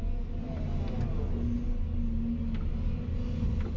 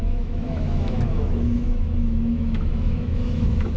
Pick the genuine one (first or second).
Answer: first